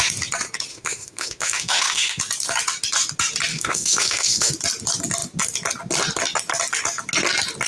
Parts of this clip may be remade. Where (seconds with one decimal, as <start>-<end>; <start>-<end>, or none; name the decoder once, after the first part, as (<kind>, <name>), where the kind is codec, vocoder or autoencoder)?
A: 0.7-2.2 (autoencoder, DAC-VAE); 3.5-4.5